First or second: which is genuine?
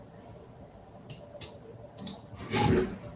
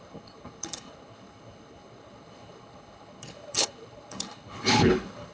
first